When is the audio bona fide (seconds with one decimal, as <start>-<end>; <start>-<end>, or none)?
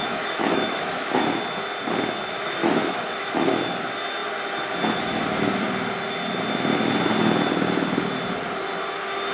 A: 1.2-2.6; 3.5-9.3